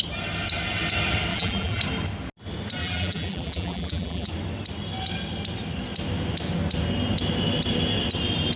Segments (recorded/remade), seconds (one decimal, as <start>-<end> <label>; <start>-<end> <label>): 0.0-1.3 recorded; 1.3-1.8 remade; 1.8-2.8 recorded; 2.8-4.3 remade; 4.3-8.6 recorded